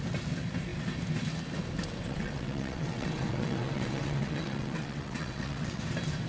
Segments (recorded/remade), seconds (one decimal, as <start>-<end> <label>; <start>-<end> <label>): 0.0-2.0 recorded; 2.0-5.8 remade; 5.8-6.3 recorded